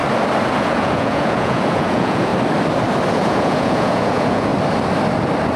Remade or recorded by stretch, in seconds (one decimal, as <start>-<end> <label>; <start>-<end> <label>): 0.0-0.6 recorded; 0.6-2.3 remade; 2.3-3.1 recorded; 3.1-4.5 remade; 4.5-5.6 recorded